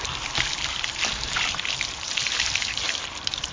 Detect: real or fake fake